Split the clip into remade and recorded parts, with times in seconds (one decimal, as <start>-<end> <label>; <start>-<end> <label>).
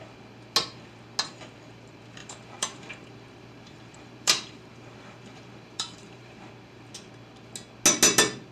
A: 0.0-2.2 recorded; 2.2-6.5 remade; 6.5-8.5 recorded